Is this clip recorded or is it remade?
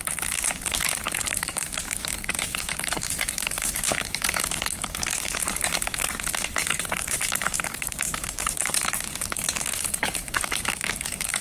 remade